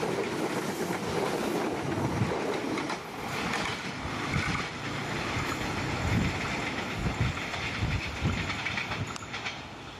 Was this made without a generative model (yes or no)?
yes